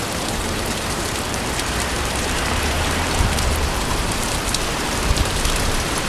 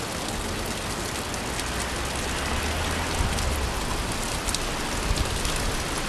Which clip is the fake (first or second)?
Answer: first